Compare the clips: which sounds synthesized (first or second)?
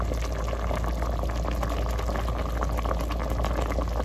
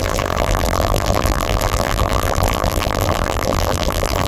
second